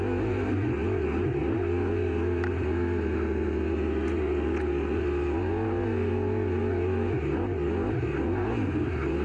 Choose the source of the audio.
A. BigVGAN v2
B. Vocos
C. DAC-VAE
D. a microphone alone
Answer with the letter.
D